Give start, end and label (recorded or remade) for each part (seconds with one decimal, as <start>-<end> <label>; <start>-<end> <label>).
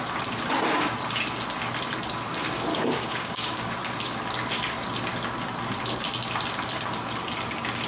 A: 0.0-2.7 recorded; 2.7-3.7 remade; 3.7-7.9 recorded